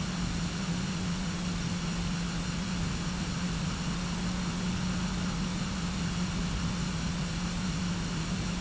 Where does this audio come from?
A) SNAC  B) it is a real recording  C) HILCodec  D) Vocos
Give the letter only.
B